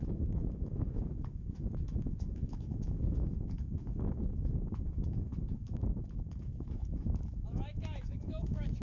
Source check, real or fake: fake